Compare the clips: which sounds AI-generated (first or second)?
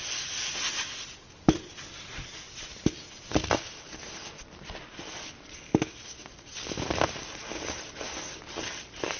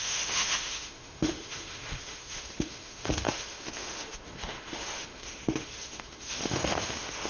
second